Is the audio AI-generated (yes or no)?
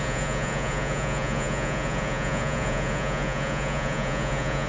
yes